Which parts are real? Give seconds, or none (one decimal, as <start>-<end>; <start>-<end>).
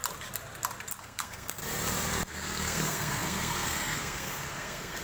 0.0-1.0; 1.6-2.3